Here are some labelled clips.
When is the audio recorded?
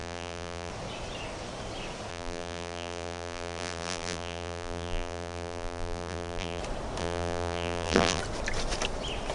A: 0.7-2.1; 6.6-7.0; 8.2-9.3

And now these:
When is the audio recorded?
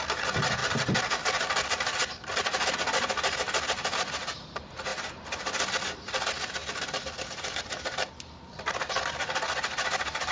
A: 0.0-0.6; 2.7-4.9; 9.0-10.3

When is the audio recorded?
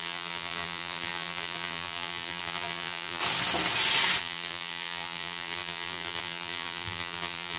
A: 3.2-4.2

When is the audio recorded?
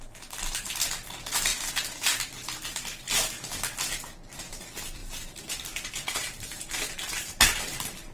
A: 0.0-5.0; 7.6-8.1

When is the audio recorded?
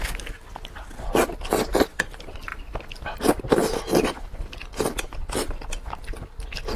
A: 0.0-6.8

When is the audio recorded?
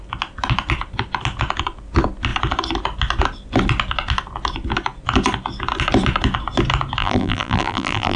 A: 0.0-7.0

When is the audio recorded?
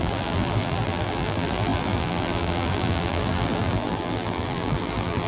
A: none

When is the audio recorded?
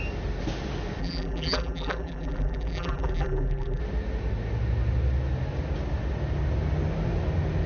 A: 0.0-1.0; 3.8-7.7